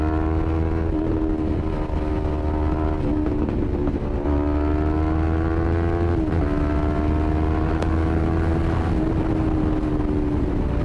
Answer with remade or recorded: recorded